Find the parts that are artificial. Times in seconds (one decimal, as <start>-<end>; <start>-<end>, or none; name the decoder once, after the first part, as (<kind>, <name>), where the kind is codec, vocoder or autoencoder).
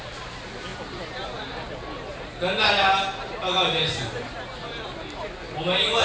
none